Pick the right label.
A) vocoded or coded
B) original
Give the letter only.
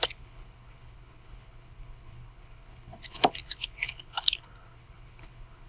A